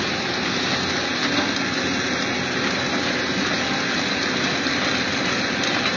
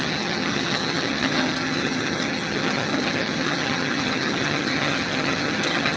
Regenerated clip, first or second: second